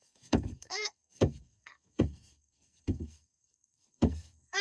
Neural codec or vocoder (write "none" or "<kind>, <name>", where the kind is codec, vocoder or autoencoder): codec, SNAC